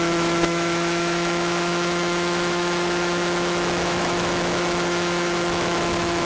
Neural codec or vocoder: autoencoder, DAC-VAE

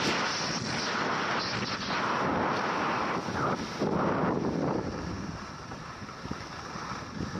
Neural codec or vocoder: none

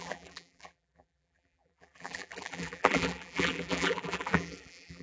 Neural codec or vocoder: vocoder, BigVGAN v2